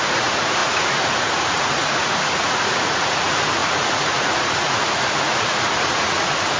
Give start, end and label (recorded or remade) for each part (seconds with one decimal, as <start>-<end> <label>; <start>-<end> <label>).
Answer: 0.0-6.6 remade